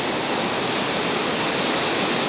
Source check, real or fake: real